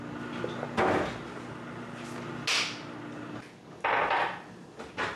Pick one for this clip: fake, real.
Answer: real